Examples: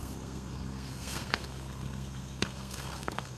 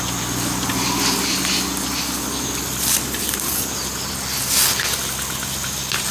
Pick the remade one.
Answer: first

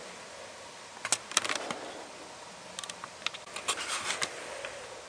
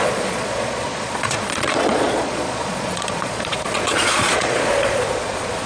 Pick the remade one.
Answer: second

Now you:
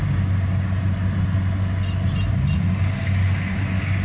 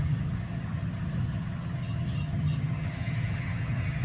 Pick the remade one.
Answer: second